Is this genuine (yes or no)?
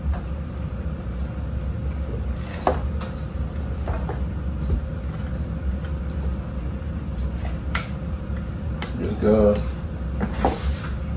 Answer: yes